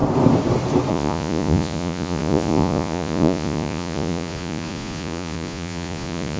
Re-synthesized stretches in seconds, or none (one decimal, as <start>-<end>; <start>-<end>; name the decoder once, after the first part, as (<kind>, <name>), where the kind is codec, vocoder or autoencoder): 0.9-6.4 (vocoder, Vocos)